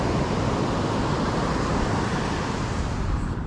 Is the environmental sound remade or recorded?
recorded